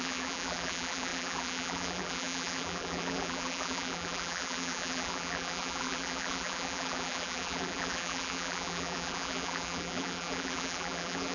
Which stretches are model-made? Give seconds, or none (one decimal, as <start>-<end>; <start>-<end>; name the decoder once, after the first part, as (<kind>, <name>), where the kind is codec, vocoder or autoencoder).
0.0-11.3 (vocoder, BigVGAN v2)